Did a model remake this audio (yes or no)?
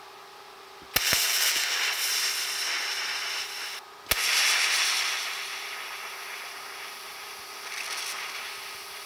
no